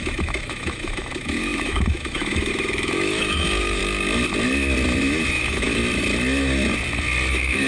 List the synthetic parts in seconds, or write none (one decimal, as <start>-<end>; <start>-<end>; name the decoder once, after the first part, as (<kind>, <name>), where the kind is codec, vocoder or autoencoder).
0.0-3.8 (autoencoder, DAC-VAE); 5.3-5.8; 7.3-7.7